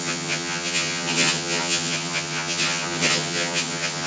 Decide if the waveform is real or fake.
fake